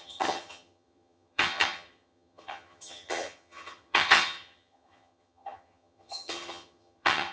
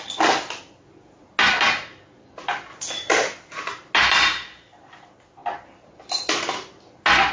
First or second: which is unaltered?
second